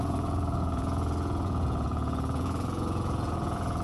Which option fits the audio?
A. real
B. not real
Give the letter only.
B